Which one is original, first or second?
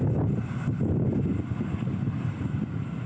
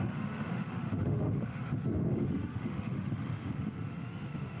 first